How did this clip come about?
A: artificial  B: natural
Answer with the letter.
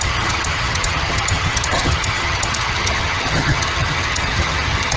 A